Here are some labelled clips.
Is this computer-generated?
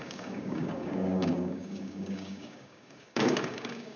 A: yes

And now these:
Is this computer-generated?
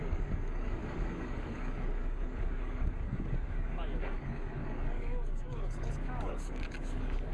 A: yes